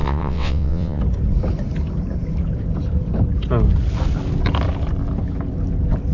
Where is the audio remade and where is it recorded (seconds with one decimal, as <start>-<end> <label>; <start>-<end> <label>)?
0.0-1.0 remade; 1.0-6.1 recorded